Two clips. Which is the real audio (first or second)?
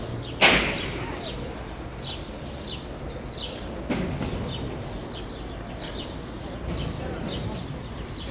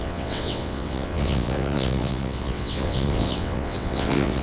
first